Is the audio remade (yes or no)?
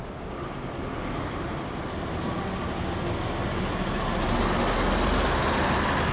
no